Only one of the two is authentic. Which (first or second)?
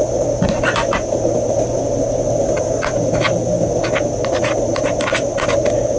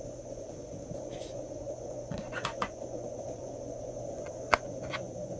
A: first